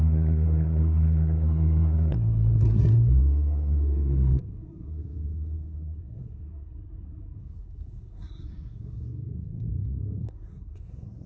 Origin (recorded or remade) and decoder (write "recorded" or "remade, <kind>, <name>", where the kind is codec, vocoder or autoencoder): remade, codec, SNAC